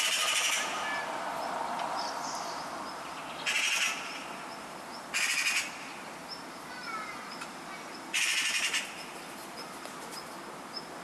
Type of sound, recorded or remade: recorded